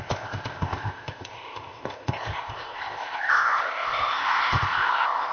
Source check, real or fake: fake